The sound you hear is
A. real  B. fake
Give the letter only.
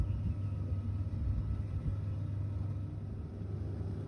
A